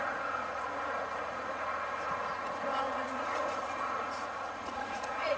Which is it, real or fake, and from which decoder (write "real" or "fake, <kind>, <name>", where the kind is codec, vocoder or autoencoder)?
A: fake, vocoder, Vocos